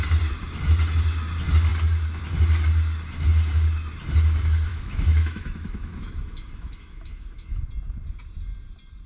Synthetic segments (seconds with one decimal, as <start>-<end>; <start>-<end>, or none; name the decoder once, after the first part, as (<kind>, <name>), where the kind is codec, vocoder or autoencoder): 4.7-7.6 (autoencoder, DAC-VAE)